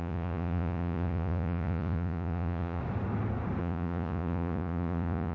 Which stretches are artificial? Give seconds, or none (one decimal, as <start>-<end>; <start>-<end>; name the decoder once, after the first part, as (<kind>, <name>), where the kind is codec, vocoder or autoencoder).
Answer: 0.0-2.8 (vocoder, Vocos); 3.6-5.3

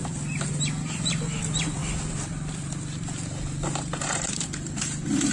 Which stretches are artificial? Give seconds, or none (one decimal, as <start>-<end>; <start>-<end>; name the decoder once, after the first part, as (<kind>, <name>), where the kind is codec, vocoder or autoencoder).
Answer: 0.8-1.8 (vocoder, BigVGAN v2); 3.8-5.3

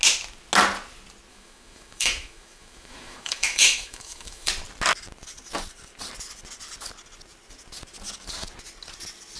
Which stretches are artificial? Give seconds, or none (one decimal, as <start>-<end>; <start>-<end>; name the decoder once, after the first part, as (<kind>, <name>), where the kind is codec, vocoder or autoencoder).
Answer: 1.3-4.5 (autoencoder, DAC-VAE)

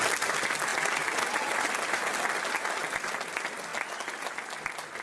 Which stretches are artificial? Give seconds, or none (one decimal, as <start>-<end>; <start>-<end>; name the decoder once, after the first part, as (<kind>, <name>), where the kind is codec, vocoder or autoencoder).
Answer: none

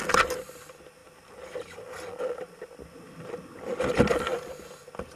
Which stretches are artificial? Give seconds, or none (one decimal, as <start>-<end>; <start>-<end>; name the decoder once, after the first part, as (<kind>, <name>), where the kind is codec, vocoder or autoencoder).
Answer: none

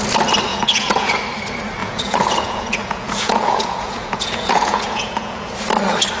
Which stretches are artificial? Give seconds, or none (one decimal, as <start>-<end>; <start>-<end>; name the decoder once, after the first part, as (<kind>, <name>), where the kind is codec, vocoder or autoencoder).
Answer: 0.5-1.2 (vocoder, Vocos); 1.8-5.5